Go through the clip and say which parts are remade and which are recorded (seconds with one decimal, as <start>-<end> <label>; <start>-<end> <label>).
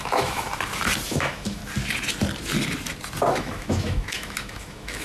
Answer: 0.0-0.5 remade; 0.5-1.1 recorded; 1.1-1.6 remade; 1.6-3.3 recorded; 3.3-5.0 remade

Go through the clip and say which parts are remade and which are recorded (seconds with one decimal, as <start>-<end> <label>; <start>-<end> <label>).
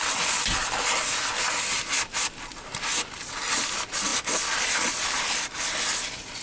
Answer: 0.0-6.4 recorded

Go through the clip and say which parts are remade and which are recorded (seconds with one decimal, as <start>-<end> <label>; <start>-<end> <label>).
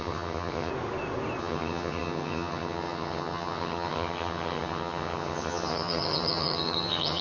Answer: 0.0-0.7 remade; 0.7-1.4 recorded; 1.4-7.2 remade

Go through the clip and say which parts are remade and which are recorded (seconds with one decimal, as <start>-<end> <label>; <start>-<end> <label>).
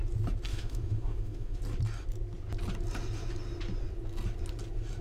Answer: 0.0-0.5 recorded; 0.5-1.6 remade; 1.6-5.0 recorded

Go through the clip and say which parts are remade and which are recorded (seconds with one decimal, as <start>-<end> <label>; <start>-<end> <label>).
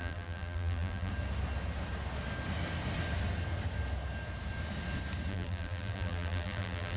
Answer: 0.0-1.1 remade; 1.1-5.3 recorded; 5.3-7.0 remade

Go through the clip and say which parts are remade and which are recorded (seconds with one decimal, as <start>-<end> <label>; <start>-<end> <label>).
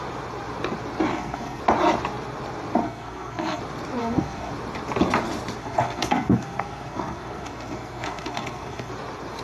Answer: 0.0-1.1 recorded; 1.1-1.6 remade; 1.6-2.8 recorded; 2.8-3.6 remade; 3.6-4.0 recorded; 4.0-4.5 remade; 4.5-5.6 recorded; 5.6-8.9 remade; 8.9-9.4 recorded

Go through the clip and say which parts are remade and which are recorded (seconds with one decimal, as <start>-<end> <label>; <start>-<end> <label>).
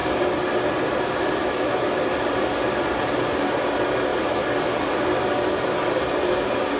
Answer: 0.0-1.4 recorded; 1.4-2.0 remade; 2.0-6.8 recorded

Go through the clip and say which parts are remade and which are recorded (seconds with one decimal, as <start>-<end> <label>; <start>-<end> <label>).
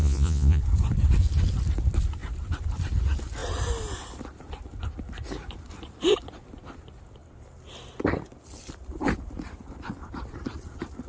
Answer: 0.0-0.6 remade; 0.6-11.1 recorded